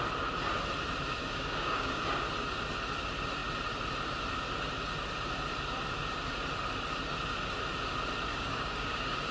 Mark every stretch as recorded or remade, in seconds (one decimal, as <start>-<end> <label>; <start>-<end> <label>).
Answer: 0.0-1.2 recorded; 1.2-2.0 remade; 2.0-8.3 recorded; 8.3-9.3 remade